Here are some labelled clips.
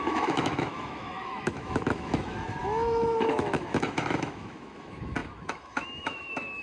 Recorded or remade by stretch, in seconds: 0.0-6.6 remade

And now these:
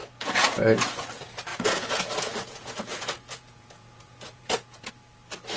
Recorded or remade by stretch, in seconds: 0.0-1.1 remade; 1.1-1.5 recorded; 1.5-4.9 remade; 4.9-5.6 recorded